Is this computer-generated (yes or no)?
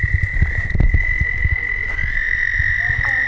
no